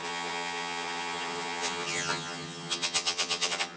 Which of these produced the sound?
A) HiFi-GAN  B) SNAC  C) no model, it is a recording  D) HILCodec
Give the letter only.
A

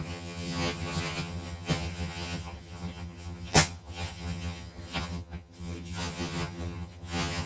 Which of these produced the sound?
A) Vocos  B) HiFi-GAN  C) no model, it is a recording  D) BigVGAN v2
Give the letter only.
B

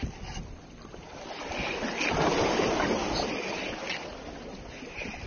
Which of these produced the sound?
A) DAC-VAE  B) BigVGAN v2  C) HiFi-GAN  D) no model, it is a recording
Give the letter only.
D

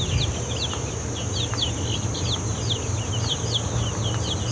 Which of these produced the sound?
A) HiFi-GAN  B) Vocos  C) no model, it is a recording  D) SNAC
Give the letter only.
C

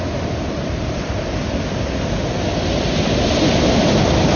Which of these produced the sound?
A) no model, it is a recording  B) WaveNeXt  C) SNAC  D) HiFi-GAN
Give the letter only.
A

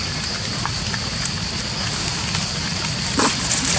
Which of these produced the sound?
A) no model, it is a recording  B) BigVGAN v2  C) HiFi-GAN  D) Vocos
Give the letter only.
A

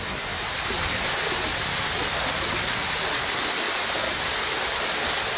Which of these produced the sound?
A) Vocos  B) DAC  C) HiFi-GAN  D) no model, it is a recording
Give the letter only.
D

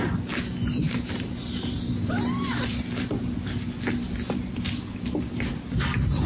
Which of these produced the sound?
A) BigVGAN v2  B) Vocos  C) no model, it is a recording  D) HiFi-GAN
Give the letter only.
C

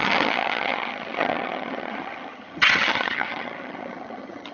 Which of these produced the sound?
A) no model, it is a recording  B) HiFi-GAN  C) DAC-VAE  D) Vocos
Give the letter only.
B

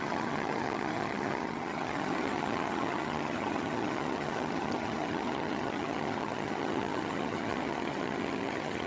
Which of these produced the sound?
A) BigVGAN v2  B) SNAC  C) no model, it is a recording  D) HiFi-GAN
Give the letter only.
D